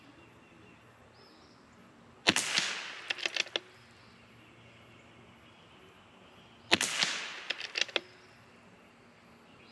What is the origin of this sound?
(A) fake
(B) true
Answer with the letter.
B